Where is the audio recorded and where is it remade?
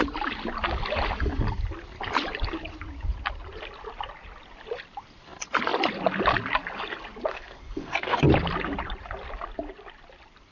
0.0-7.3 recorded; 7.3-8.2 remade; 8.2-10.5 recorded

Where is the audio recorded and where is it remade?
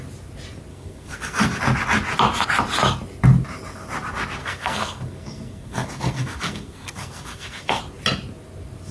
0.0-0.7 recorded; 0.7-1.6 remade; 1.6-4.4 recorded; 4.4-7.8 remade; 7.8-8.9 recorded